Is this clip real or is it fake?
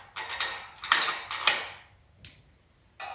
real